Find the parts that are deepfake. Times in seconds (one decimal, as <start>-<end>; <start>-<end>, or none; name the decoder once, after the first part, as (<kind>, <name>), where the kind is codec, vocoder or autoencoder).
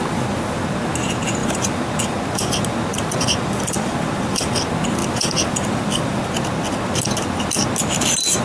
1.4-1.9 (vocoder, BigVGAN v2); 2.9-4.4; 5.0-6.2